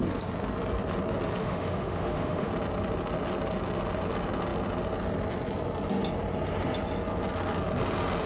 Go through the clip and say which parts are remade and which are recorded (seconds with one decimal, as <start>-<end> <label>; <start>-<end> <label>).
0.0-1.4 recorded; 1.4-2.5 remade; 2.5-8.3 recorded